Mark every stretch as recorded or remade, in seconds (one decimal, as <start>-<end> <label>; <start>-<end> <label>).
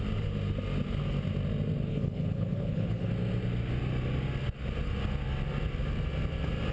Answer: 0.0-1.9 recorded; 1.9-3.1 remade; 3.1-6.7 recorded